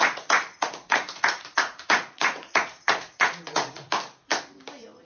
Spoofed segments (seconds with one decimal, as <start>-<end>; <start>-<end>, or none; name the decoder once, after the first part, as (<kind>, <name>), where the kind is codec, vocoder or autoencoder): 0.0-3.8 (vocoder, Vocos)